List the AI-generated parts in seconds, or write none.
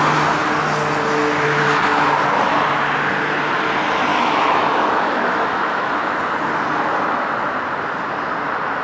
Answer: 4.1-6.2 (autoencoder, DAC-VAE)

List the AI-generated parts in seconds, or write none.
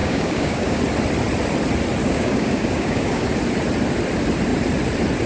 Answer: 0.0-0.8 (codec, DAC); 2.0-3.3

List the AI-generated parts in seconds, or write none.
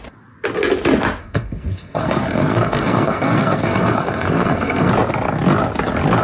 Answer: 1.2-4.9 (codec, SNAC)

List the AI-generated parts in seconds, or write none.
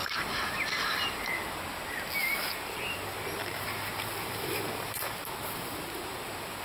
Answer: 0.0-1.6 (vocoder, BigVGAN v2); 2.2-6.6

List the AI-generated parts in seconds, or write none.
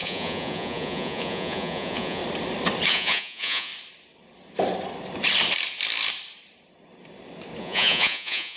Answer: 0.0-2.2 (vocoder, Vocos); 2.9-3.7; 7.6-8.6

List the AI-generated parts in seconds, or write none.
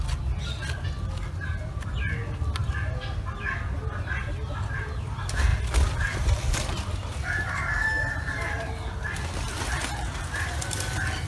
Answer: none